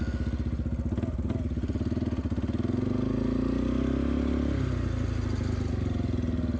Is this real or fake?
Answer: real